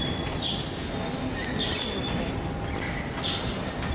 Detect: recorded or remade recorded